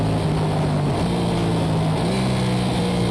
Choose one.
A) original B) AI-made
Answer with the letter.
A